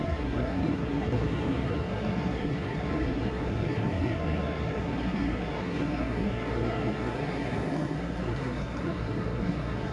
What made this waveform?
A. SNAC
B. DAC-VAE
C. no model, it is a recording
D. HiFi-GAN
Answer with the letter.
A